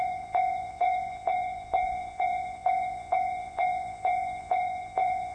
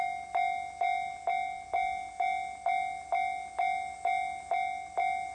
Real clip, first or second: second